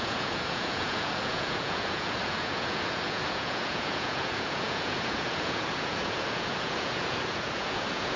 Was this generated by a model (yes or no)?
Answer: yes